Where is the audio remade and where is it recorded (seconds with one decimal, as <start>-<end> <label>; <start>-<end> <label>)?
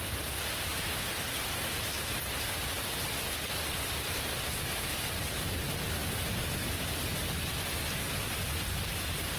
0.0-9.4 recorded